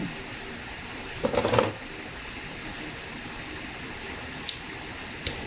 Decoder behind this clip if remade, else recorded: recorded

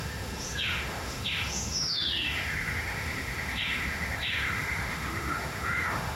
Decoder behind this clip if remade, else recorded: remade, autoencoder, DAC-VAE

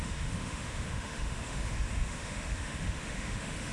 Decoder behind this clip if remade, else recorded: remade, autoencoder, DAC-VAE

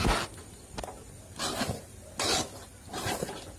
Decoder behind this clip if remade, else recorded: recorded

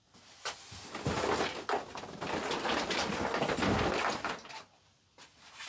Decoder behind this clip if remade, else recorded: recorded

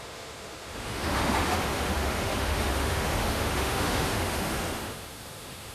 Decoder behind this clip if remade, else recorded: remade, autoencoder, DAC-VAE